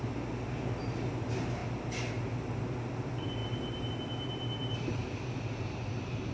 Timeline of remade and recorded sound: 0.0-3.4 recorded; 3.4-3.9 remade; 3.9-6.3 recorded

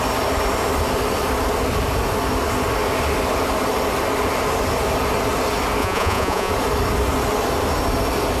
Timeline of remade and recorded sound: 0.0-5.8 recorded; 5.8-6.5 remade; 6.5-8.4 recorded

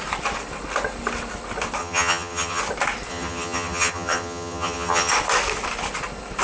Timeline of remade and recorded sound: 0.0-1.8 recorded; 1.8-2.6 remade; 2.6-3.1 recorded; 3.1-5.1 remade; 5.1-6.4 recorded

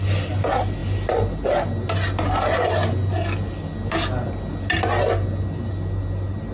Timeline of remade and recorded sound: 0.0-6.5 recorded